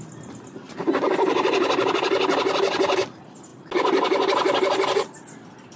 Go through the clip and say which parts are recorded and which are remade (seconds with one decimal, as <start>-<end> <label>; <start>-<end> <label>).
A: 0.0-5.8 recorded

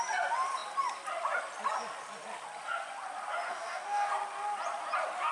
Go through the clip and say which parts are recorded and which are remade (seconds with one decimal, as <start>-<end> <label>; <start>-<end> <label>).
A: 0.0-3.5 recorded; 3.5-4.1 remade; 4.1-5.3 recorded

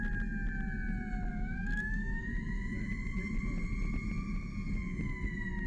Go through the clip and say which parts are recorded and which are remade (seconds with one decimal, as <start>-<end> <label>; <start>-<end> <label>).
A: 0.0-1.3 recorded; 1.3-2.3 remade; 2.3-5.7 recorded

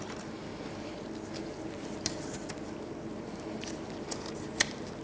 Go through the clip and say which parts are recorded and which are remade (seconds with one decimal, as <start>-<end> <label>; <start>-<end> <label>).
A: 0.0-5.0 recorded

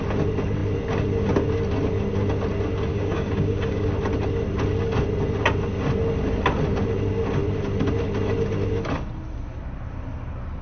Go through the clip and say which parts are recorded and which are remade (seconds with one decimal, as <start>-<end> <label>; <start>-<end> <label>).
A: 0.0-2.9 recorded; 2.9-3.9 remade; 3.9-10.6 recorded

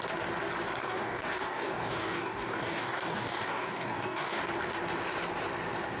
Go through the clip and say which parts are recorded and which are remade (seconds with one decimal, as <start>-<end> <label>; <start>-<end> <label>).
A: 0.0-0.8 recorded; 0.8-4.4 remade; 4.4-6.0 recorded